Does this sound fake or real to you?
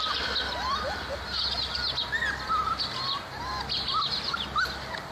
real